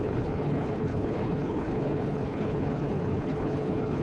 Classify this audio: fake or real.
fake